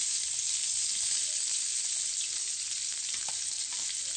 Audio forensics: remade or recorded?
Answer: recorded